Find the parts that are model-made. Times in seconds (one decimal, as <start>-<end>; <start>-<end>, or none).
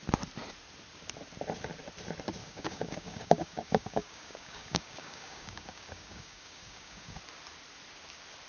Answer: 2.4-7.2